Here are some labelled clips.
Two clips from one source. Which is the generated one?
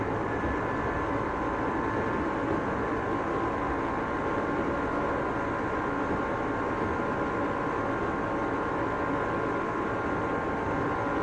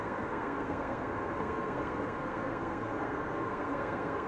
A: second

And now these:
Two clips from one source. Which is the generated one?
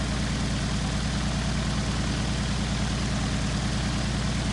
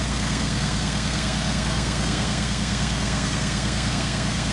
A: second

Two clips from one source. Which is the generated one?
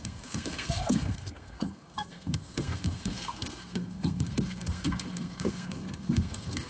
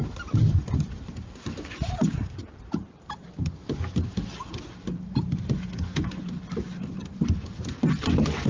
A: first